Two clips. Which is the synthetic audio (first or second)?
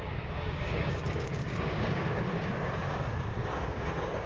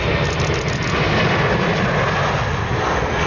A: first